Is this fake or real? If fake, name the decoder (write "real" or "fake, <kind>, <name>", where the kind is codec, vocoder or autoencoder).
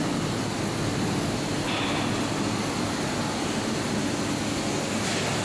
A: real